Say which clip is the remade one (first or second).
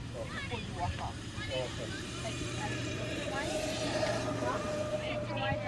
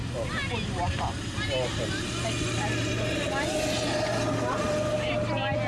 first